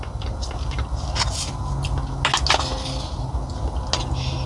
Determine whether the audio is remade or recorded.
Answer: recorded